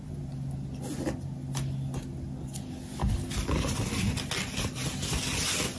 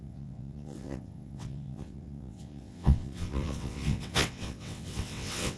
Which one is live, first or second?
first